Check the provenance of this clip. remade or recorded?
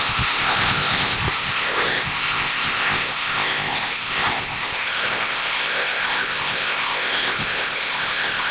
remade